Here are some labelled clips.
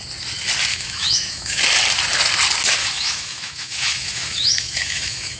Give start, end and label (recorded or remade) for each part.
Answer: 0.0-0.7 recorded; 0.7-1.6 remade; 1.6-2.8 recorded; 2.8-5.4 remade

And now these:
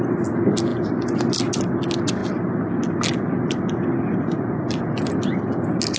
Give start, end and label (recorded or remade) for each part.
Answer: 0.0-6.0 recorded

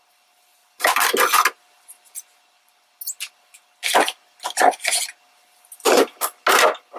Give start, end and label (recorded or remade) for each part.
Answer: 0.0-7.0 recorded

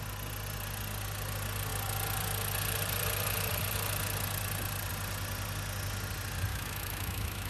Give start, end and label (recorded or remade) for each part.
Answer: 0.0-6.5 recorded; 6.5-7.5 remade

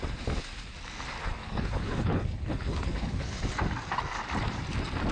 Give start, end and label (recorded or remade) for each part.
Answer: 0.0-1.2 recorded; 1.2-3.4 remade; 3.4-5.1 recorded

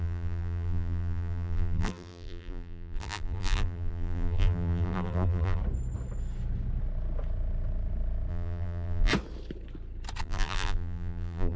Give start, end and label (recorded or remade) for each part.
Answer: 0.0-5.6 remade; 5.6-8.3 recorded; 8.3-9.1 remade; 9.1-10.2 recorded; 10.2-11.6 remade

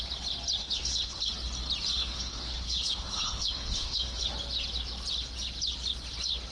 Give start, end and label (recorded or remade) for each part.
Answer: 0.0-0.6 recorded; 0.6-1.3 remade; 1.3-2.0 recorded; 2.0-4.3 remade; 4.3-6.5 recorded